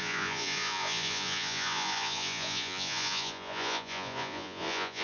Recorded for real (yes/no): no